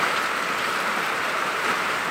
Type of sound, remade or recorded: remade